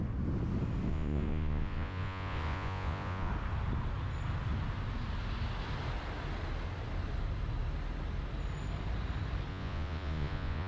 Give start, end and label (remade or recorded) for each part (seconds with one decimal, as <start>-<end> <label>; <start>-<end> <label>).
0.0-0.9 recorded; 0.9-3.3 remade; 3.3-9.5 recorded; 9.5-10.7 remade

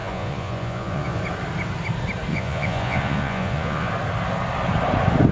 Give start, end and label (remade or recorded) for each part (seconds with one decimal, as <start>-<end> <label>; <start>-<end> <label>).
0.0-1.2 remade; 1.2-2.3 recorded; 2.3-3.9 remade; 3.9-5.3 recorded